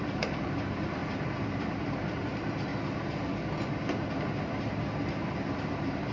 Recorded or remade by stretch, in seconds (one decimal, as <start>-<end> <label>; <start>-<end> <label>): 0.0-1.0 remade; 1.0-1.9 recorded; 1.9-2.7 remade; 2.7-5.5 recorded; 5.5-6.1 remade